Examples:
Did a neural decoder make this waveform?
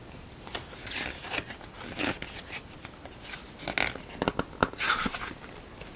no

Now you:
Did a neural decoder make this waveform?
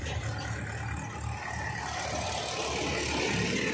no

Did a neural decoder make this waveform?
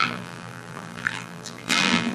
yes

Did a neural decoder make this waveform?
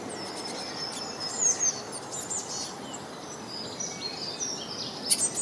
no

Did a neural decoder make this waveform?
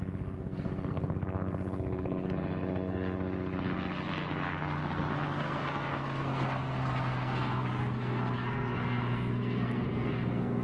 yes